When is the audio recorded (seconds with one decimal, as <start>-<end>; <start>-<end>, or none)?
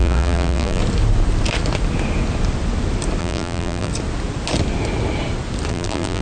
0.8-3.2; 3.9-5.7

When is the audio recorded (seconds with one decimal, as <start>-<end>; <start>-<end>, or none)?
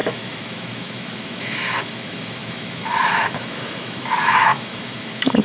none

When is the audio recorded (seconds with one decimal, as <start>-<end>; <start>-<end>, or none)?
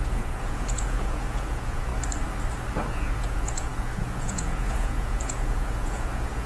1.9-2.9